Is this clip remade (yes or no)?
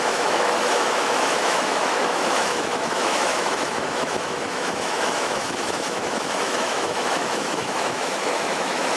yes